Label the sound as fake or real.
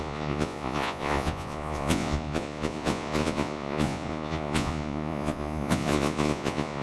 fake